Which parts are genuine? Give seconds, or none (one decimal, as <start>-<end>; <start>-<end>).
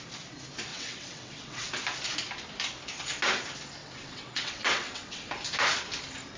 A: 0.0-0.7; 1.7-3.8; 5.3-6.4